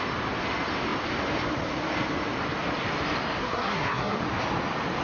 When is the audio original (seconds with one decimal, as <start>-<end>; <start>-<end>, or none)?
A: 0.0-3.4; 4.2-5.0